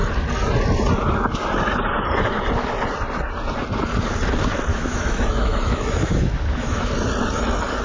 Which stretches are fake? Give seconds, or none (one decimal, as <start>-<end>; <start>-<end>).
4.7-6.9